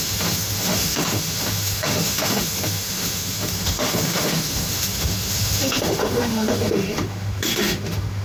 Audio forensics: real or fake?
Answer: fake